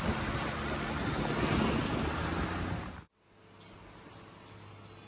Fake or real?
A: real